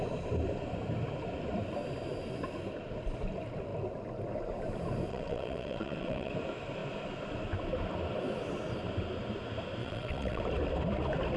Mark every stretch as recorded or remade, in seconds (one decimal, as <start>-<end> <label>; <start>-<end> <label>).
0.0-5.1 recorded; 5.1-6.3 remade; 6.3-9.8 recorded; 9.8-10.4 remade; 10.4-11.4 recorded